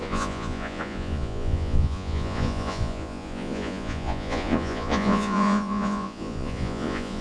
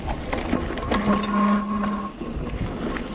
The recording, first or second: second